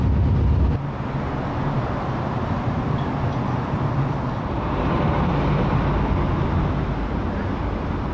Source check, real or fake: real